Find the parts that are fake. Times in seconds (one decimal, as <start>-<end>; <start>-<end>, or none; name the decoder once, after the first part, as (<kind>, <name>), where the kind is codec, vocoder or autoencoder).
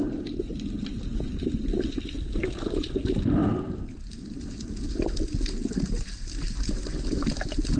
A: none